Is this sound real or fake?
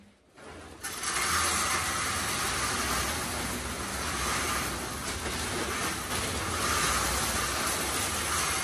real